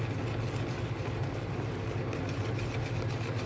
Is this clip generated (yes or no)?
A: no